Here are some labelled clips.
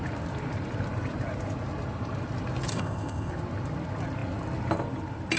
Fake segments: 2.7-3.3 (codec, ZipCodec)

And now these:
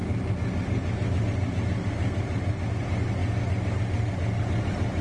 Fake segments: none

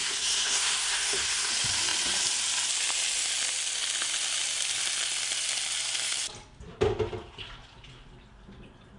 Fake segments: 0.0-1.5 (codec, SNAC)

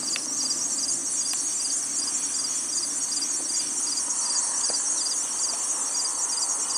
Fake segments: none

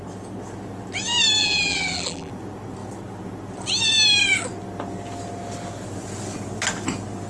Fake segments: 1.4-2.3 (vocoder, BigVGAN v2)

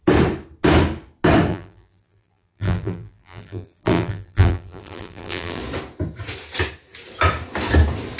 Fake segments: 1.5-5.6 (vocoder, BigVGAN v2)